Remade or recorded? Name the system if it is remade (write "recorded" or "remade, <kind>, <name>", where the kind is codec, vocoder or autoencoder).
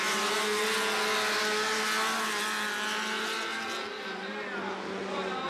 recorded